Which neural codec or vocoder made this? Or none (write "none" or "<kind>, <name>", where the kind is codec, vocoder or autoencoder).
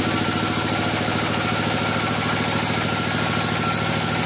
none